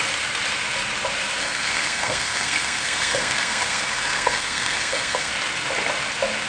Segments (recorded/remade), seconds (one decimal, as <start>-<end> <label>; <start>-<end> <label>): 0.0-1.4 recorded; 1.4-5.3 remade; 5.3-6.5 recorded